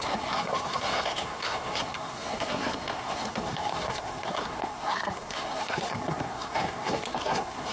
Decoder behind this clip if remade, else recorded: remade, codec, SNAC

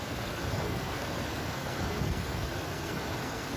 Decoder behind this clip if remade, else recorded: remade, codec, SNAC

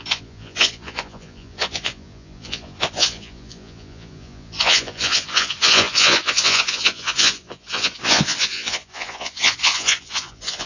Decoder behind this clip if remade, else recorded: remade, vocoder, Vocos